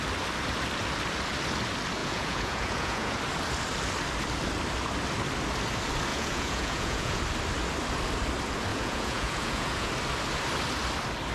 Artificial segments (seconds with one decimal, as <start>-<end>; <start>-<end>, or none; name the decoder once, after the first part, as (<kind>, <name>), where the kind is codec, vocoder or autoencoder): 2.0-3.2 (vocoder, Vocos); 6.1-7.2; 8.7-9.9